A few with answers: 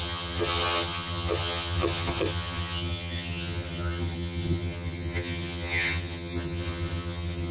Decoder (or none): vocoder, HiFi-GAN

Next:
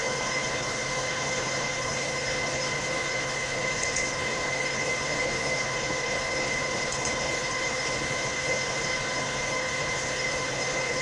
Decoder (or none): codec, HILCodec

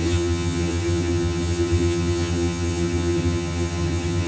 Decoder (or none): vocoder, HiFi-GAN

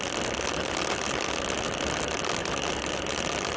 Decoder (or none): none